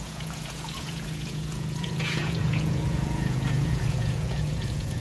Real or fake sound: fake